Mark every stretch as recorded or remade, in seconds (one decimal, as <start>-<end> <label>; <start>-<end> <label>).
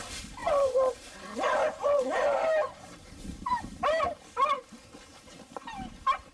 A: 0.0-0.4 recorded; 0.4-4.2 remade; 4.2-5.1 recorded; 5.1-6.3 remade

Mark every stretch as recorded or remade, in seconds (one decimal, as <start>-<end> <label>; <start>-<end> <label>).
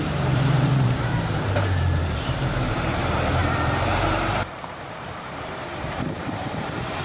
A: 0.0-7.0 remade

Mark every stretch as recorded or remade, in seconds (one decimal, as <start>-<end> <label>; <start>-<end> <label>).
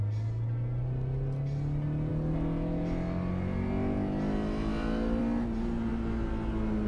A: 0.0-6.9 recorded